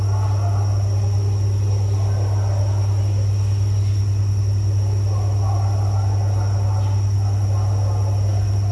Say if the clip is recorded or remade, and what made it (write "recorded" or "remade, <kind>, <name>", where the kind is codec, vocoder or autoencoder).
recorded